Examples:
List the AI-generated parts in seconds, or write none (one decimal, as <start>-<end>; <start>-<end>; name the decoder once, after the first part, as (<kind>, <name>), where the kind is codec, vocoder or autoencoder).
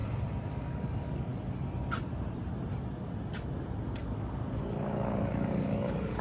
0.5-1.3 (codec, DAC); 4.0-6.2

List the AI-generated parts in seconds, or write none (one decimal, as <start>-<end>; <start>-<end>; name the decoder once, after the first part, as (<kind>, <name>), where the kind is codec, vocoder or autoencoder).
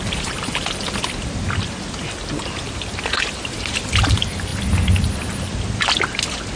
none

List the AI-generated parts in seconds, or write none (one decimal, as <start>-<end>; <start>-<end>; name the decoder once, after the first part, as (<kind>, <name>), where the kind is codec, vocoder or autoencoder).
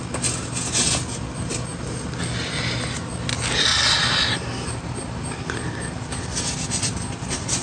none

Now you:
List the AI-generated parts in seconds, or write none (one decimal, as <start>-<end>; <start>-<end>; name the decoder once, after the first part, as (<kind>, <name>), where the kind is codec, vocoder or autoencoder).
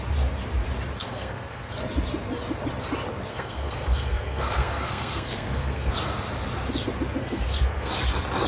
1.0-1.7 (codec, SNAC); 3.3-5.9; 7.2-7.9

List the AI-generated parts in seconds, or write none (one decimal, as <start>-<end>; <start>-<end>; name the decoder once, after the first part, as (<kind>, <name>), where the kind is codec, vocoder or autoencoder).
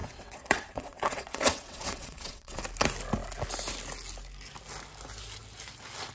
0.0-2.6 (vocoder, WaveNeXt)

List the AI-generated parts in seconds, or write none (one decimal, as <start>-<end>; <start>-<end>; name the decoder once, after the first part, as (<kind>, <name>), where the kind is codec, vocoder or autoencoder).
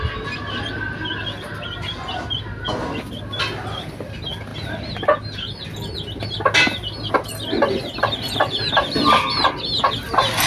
none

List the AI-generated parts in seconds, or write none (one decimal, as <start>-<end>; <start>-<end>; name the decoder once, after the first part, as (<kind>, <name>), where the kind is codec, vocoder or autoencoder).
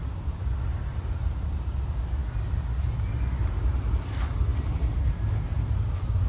none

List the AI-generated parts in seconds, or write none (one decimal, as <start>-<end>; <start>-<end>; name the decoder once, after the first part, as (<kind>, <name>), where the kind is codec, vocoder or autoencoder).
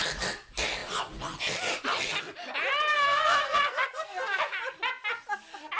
2.9-4.4 (codec, SNAC)